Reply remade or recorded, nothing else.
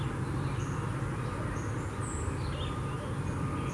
recorded